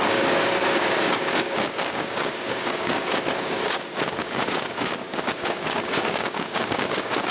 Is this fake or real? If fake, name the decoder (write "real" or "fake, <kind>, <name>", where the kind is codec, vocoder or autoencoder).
fake, codec, DAC